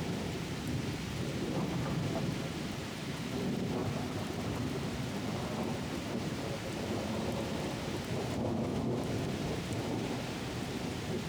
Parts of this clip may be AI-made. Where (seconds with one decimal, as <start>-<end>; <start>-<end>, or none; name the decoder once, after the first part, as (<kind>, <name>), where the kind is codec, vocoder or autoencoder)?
0.0-3.8 (vocoder, BigVGAN v2); 5.7-8.7; 9.4-11.3